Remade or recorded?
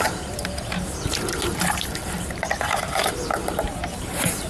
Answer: remade